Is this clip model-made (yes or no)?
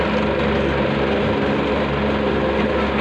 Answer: no